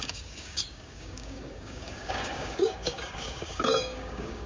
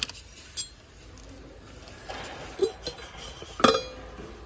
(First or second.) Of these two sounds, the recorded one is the second